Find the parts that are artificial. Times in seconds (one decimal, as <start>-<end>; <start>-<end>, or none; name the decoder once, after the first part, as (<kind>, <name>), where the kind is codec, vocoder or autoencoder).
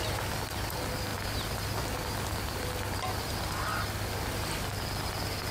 none